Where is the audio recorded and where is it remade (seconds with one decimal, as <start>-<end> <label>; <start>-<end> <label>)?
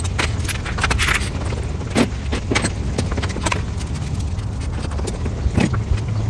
0.0-6.3 recorded